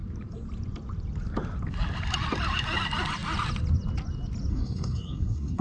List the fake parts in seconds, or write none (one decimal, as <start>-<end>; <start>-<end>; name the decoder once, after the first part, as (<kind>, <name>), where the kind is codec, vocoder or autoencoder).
4.5-5.6 (codec, SNAC)